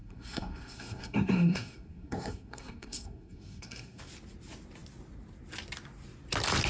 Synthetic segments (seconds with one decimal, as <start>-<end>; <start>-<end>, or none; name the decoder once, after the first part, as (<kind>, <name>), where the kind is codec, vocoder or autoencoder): 0.0-4.0 (codec, SNAC)